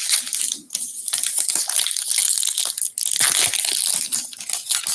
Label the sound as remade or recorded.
recorded